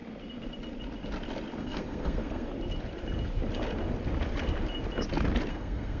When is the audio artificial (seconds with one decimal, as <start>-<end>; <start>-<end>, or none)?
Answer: 1.6-2.5; 5.5-6.0